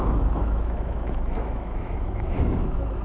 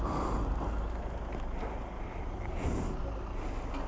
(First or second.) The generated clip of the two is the first